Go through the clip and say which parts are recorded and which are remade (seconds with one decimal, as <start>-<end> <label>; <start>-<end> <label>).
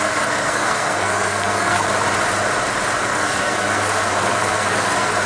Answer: 0.0-1.9 remade; 1.9-3.0 recorded; 3.0-5.3 remade